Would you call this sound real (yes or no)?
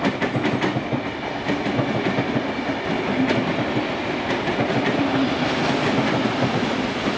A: yes